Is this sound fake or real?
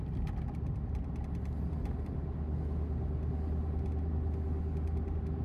real